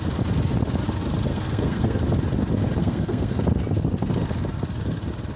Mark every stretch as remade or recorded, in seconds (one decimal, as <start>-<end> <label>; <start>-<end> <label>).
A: 0.0-1.3 recorded; 1.3-2.0 remade; 2.0-2.8 recorded; 2.8-3.4 remade; 3.4-5.4 recorded